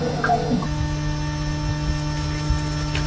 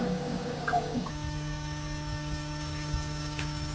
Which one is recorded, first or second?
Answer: first